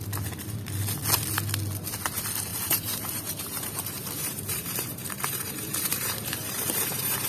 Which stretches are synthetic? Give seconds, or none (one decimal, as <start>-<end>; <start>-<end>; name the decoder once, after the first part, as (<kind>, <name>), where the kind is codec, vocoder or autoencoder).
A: 2.5-7.3 (vocoder, BigVGAN v2)